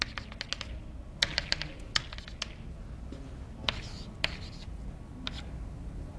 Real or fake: real